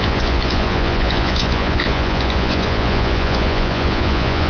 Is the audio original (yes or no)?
no